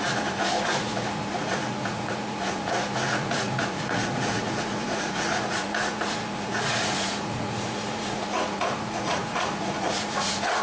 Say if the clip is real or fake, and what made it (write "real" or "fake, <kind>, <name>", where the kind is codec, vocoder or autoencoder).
fake, vocoder, Vocos